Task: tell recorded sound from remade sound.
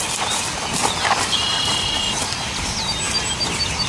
recorded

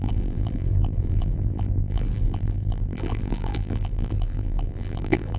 remade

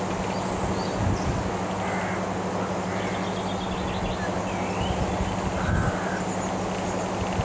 recorded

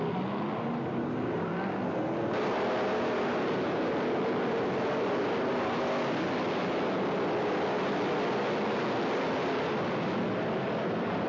recorded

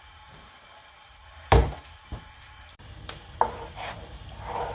remade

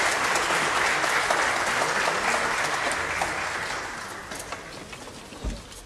recorded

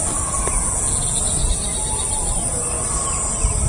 recorded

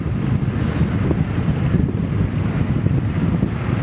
recorded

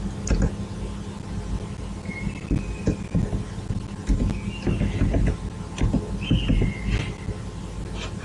recorded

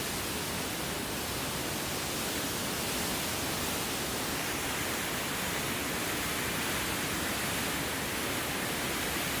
recorded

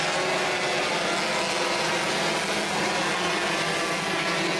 recorded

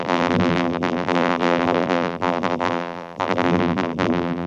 remade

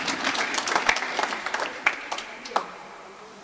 remade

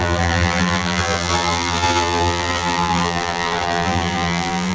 remade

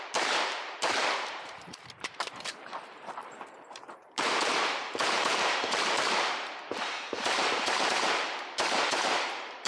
remade